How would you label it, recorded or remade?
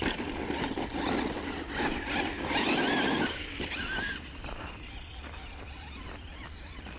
recorded